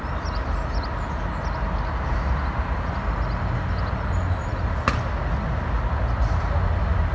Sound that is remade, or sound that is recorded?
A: recorded